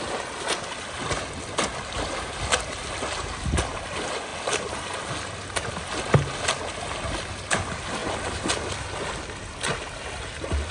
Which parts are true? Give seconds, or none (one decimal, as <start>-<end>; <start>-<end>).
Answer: 0.0-10.7